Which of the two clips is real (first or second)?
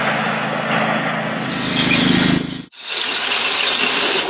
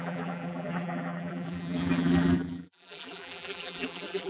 first